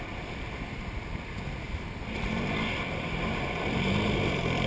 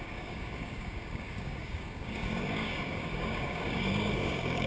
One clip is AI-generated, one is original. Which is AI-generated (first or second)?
second